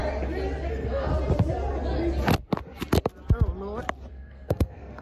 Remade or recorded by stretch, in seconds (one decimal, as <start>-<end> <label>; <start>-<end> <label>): 0.0-0.7 recorded; 0.7-1.1 remade; 1.1-4.1 recorded; 4.1-5.0 remade